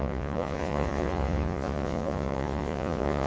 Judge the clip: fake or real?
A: fake